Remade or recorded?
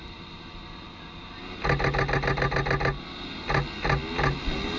recorded